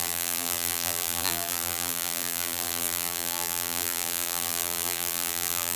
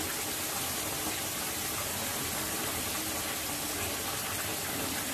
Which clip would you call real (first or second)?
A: second